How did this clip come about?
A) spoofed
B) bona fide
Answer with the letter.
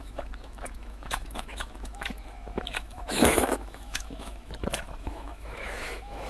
A